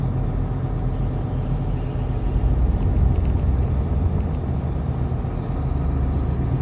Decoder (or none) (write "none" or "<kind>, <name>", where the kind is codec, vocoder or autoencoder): none